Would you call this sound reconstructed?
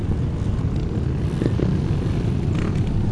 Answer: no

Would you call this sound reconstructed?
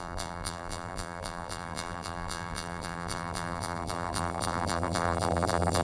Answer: yes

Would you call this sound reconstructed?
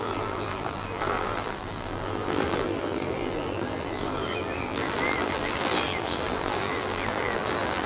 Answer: yes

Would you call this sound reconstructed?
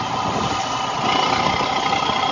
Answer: no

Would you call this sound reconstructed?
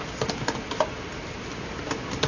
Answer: no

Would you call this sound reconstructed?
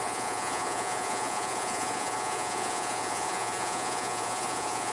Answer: yes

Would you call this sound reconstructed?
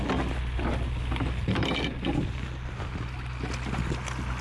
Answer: no